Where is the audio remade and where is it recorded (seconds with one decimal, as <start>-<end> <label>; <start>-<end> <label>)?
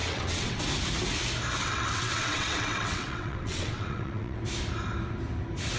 0.0-0.6 remade; 0.6-1.6 recorded; 1.6-4.4 remade; 4.4-5.8 recorded